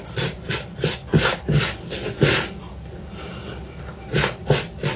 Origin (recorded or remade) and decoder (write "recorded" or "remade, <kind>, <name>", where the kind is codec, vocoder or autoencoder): recorded